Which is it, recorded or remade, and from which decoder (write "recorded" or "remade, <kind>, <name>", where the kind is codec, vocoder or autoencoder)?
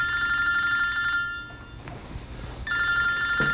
recorded